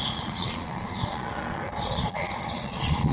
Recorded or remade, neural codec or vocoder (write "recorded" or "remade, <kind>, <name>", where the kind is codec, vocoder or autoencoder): remade, vocoder, Vocos